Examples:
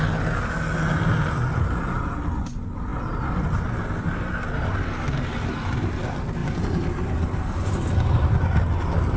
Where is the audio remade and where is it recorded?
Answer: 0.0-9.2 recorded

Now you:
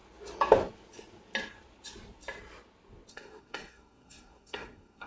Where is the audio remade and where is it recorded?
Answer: 0.0-3.1 recorded; 3.1-5.1 remade

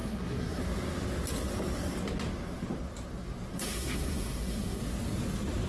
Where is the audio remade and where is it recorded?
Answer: 0.0-0.6 remade; 0.6-3.5 recorded; 3.5-4.8 remade; 4.8-5.7 recorded